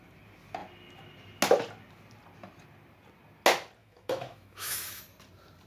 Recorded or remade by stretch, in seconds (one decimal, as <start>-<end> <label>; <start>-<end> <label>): 0.0-3.8 recorded; 3.8-5.0 remade; 5.0-5.7 recorded